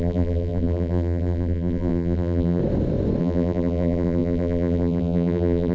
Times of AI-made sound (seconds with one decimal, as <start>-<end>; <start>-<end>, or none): 0.0-2.6; 3.2-5.7